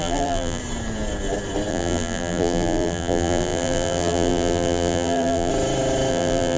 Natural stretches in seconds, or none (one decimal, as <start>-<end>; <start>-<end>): 0.6-1.7; 5.5-6.1